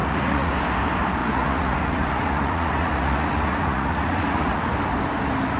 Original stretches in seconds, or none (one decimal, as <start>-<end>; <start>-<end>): 0.5-1.2; 4.6-5.6